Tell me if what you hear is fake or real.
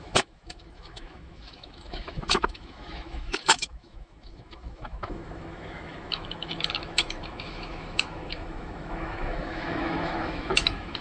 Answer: fake